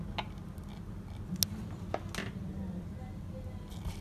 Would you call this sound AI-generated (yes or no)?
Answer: no